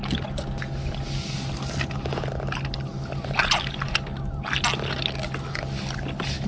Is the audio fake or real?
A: real